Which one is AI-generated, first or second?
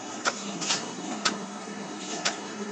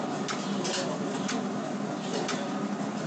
first